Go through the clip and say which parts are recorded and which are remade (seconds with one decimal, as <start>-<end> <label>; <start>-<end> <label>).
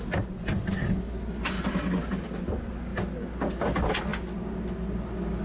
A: 0.0-5.4 recorded